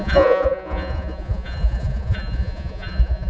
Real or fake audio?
fake